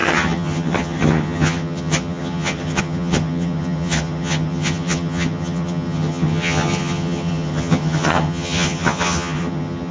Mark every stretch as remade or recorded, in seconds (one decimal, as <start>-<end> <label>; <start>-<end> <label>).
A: 0.0-9.9 remade